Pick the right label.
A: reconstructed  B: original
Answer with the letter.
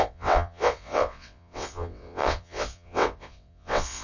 A